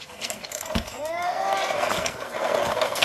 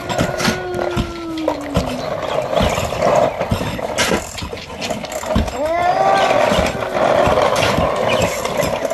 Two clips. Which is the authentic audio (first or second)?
second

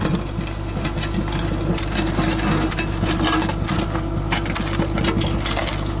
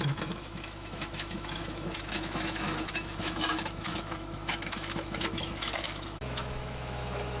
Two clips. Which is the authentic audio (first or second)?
first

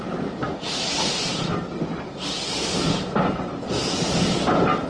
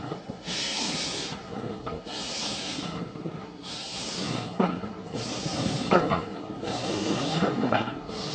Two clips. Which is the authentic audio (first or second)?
first